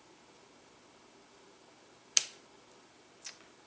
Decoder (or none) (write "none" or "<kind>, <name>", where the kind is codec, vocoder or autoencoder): none